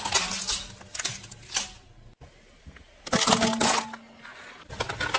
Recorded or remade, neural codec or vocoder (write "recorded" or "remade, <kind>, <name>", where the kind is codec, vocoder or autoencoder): recorded